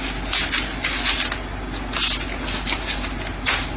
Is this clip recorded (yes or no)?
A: yes